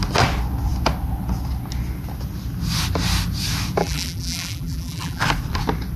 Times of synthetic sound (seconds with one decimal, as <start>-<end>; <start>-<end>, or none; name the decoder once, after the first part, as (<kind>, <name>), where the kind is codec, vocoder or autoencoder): 3.8-5.2 (vocoder, BigVGAN v2)